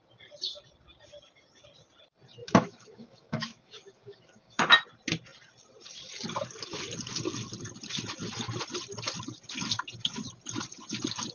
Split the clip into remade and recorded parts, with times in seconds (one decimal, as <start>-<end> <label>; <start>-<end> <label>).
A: 0.0-2.4 recorded; 2.4-4.7 remade; 4.7-11.3 recorded